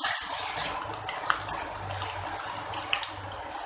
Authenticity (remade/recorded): recorded